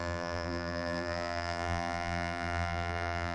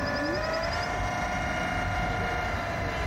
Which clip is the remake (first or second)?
first